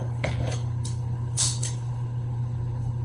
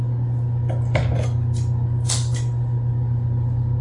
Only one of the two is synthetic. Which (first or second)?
first